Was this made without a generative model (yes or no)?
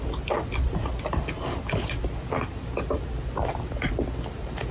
yes